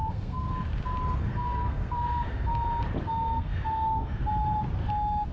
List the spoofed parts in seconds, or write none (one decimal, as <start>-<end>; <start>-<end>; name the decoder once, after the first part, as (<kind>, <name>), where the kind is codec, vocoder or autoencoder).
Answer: 0.0-0.5 (codec, SNAC); 1.2-2.5; 3.1-4.2